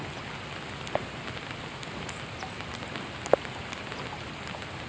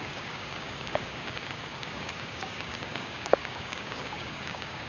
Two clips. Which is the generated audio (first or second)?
second